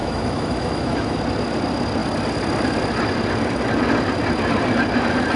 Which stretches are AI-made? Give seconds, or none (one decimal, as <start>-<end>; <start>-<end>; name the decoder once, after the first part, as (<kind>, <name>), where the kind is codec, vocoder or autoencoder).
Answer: 0.0-1.2 (autoencoder, DAC-VAE)